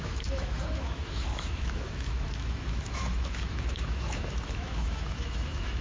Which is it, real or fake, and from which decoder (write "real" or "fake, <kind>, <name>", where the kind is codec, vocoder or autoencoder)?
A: fake, autoencoder, DAC-VAE